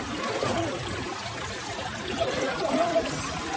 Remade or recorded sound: recorded